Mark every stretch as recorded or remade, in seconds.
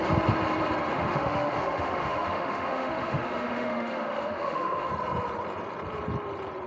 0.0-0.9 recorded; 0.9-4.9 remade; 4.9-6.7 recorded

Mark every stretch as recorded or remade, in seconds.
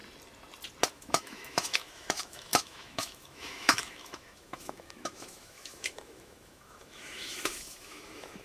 0.0-0.9 recorded; 0.9-8.4 remade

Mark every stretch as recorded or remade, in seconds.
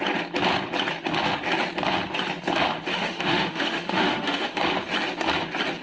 0.0-2.9 recorded; 2.9-4.6 remade; 4.6-5.8 recorded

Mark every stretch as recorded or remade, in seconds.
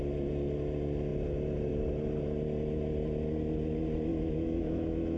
0.0-4.1 recorded; 4.1-5.2 remade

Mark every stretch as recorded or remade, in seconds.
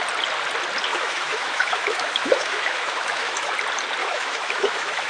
0.0-0.9 recorded; 0.9-3.5 remade; 3.5-4.0 recorded; 4.0-5.1 remade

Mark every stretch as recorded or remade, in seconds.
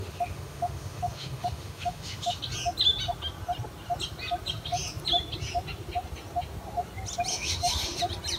0.0-2.4 remade; 2.4-7.3 recorded; 7.3-8.0 remade; 8.0-8.4 recorded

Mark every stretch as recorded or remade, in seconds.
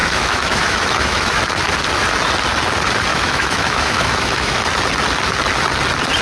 0.0-1.4 remade; 1.4-3.1 recorded; 3.1-4.6 remade; 4.6-6.2 recorded